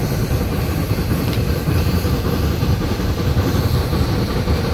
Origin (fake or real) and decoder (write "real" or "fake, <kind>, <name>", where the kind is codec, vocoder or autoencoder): fake, vocoder, BigVGAN v2